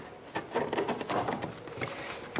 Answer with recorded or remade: recorded